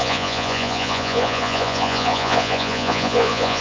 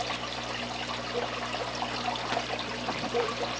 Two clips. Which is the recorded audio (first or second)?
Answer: second